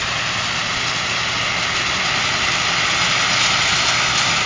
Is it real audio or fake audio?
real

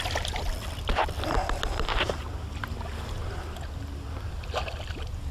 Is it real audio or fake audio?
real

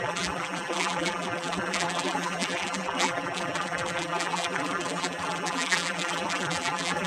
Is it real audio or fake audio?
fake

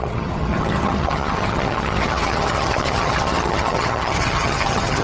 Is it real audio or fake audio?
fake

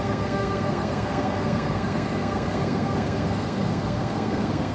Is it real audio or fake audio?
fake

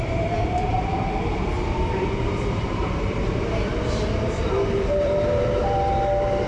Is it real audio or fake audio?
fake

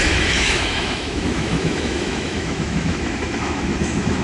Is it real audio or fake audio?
fake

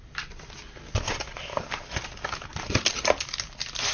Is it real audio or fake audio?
real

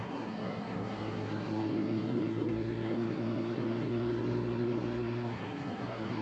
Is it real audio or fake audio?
fake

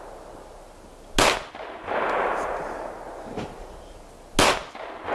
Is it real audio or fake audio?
real